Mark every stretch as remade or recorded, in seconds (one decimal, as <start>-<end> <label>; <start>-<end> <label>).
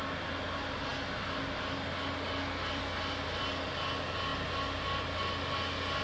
0.0-6.0 recorded